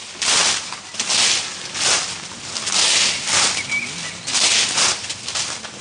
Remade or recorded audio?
recorded